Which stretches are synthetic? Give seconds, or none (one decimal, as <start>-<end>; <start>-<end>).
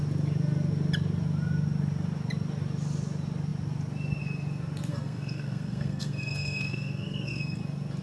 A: 4.9-7.6